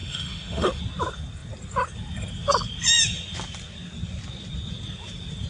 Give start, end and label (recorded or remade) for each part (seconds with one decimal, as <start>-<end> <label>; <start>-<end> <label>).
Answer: 0.0-0.8 remade; 0.8-5.5 recorded